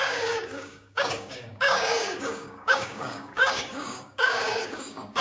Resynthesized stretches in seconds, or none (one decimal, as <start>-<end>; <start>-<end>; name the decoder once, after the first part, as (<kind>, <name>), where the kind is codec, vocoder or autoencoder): 0.0-5.2 (codec, DAC)